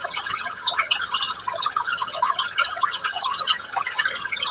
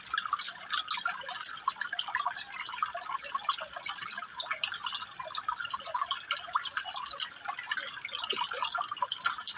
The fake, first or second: first